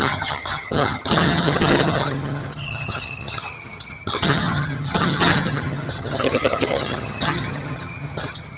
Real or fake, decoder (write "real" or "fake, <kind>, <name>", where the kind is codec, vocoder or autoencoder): fake, vocoder, HiFi-GAN